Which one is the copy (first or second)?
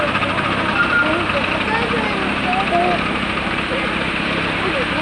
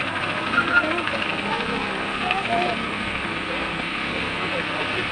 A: second